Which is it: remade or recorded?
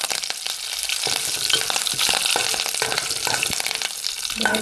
recorded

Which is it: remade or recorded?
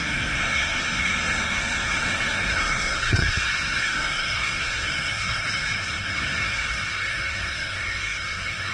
remade